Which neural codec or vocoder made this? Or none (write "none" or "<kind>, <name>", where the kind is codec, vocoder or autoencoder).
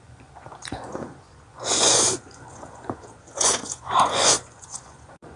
vocoder, Vocos